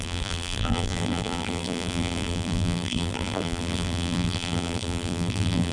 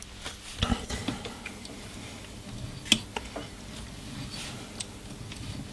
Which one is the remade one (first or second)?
first